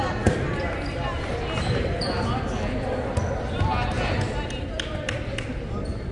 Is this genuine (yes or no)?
yes